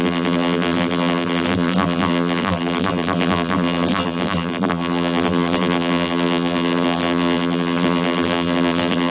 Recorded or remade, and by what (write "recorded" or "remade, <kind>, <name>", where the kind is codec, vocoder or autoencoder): remade, vocoder, BigVGAN v2